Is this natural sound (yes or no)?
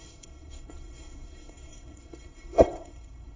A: no